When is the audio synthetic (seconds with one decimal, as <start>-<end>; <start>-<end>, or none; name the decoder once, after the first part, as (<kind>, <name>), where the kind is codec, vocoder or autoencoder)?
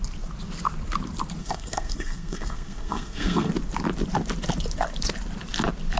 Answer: 1.4-3.5 (codec, SNAC)